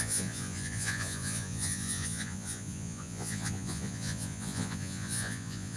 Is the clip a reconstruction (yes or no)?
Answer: yes